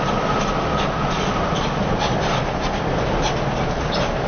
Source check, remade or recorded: recorded